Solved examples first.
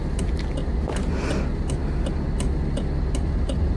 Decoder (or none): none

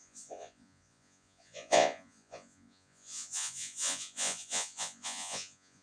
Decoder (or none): vocoder, Vocos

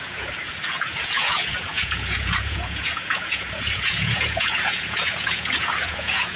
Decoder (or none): vocoder, Vocos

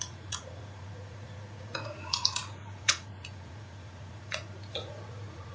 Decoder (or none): vocoder, Vocos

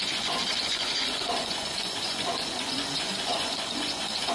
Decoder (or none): vocoder, Vocos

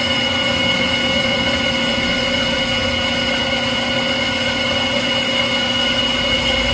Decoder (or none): none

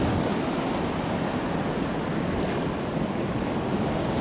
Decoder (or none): none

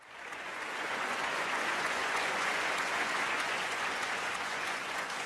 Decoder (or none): vocoder, Vocos